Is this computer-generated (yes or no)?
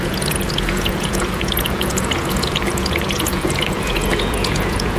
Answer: yes